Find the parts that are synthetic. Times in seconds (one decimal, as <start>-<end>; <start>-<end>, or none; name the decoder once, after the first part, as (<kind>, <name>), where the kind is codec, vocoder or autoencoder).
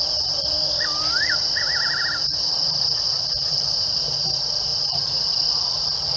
none